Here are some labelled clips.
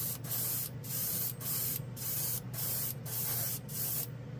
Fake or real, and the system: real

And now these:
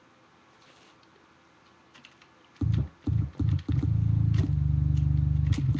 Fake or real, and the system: real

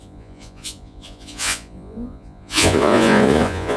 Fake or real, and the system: fake, vocoder, Vocos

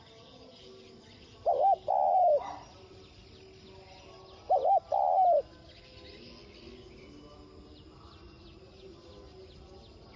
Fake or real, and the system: real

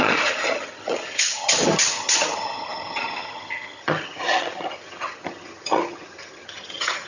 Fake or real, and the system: fake, vocoder, HiFi-GAN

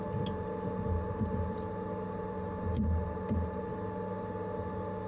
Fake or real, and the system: real